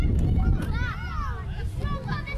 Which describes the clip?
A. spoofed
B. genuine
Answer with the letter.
B